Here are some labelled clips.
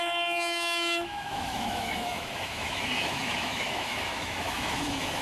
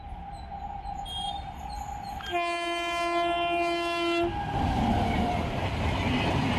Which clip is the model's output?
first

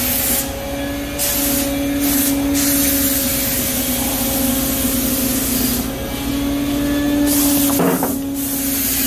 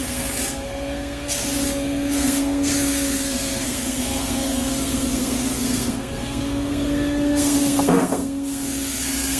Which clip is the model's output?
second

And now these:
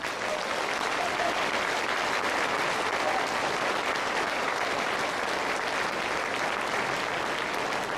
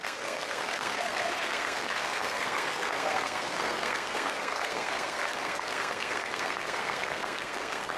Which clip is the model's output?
second